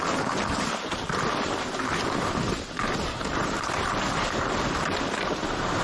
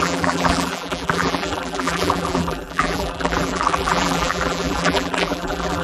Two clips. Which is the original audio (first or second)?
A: first